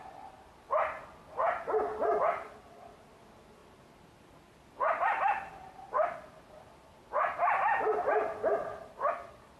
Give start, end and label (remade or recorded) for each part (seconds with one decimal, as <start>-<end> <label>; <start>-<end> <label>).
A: 0.0-2.0 recorded; 2.0-3.1 remade; 3.1-3.6 recorded; 3.6-6.7 remade; 6.7-9.6 recorded